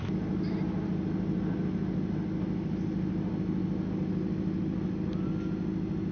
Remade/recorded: recorded